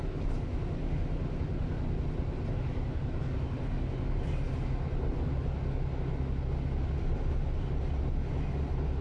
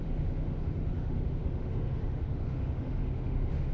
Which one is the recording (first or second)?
first